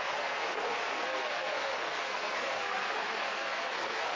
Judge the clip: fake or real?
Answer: fake